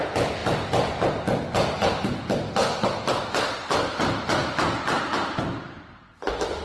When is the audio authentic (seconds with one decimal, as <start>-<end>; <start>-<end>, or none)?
0.0-6.6